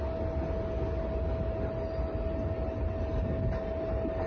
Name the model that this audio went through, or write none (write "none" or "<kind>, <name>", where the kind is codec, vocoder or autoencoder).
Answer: none